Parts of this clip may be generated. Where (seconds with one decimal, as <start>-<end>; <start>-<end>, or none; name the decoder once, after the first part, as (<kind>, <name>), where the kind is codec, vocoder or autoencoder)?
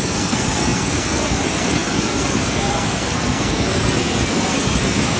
0.0-5.2 (codec, SNAC)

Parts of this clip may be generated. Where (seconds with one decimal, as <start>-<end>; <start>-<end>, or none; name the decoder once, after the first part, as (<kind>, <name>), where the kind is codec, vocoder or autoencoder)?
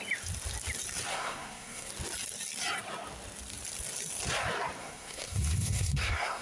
1.1-1.9 (codec, SNAC); 4.8-6.4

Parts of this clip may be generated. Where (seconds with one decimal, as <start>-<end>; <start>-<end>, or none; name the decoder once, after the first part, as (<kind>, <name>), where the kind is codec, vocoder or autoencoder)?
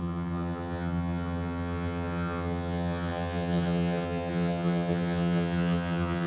0.0-6.3 (vocoder, HiFi-GAN)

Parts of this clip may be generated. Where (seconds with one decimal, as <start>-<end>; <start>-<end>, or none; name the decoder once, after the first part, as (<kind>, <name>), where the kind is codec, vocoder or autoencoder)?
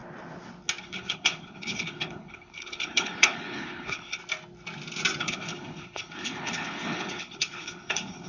0.8-4.2 (codec, HILCodec); 5.2-8.3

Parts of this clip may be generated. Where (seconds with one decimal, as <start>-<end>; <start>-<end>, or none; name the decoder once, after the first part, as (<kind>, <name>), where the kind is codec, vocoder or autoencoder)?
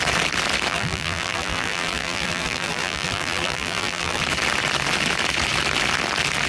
0.7-4.2 (vocoder, BigVGAN v2)